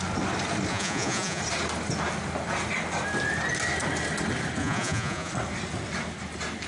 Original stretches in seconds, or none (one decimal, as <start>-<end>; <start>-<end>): 0.0-0.7; 1.4-4.6; 5.3-6.7